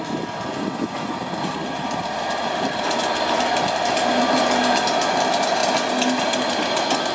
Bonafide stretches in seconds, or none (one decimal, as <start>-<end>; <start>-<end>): 0.0-1.6; 3.4-7.1